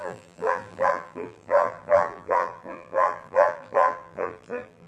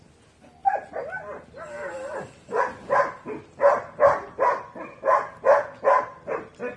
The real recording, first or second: second